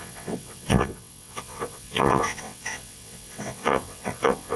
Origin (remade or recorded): remade